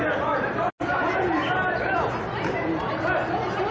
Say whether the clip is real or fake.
real